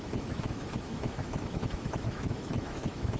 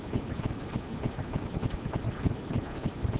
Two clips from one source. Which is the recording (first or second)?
second